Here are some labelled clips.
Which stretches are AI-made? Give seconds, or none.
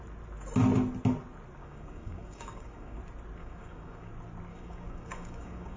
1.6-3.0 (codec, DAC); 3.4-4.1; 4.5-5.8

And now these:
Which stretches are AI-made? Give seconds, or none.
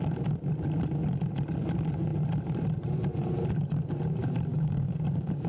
4.5-5.5 (codec, DAC)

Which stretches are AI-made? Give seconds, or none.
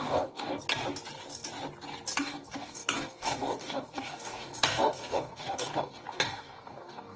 0.0-0.6 (codec, DAC); 2.2-7.2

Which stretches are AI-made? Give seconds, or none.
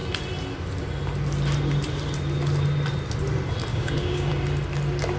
3.7-4.3 (codec, DAC)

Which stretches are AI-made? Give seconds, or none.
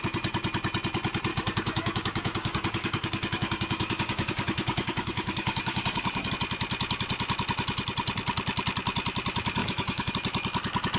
1.3-6.3 (codec, DAC); 9.6-10.1